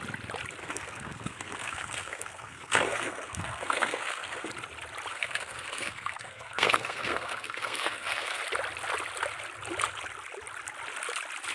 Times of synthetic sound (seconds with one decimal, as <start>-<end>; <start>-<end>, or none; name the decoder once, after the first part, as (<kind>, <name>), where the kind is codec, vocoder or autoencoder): 0.6-4.5 (codec, SNAC); 5.1-8.4